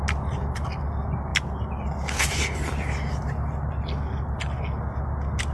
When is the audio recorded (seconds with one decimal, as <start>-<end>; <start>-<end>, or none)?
0.0-5.5